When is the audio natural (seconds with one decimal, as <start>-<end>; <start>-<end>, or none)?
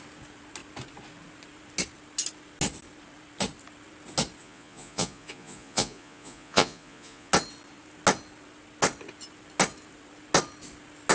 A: 0.0-4.4; 7.3-11.1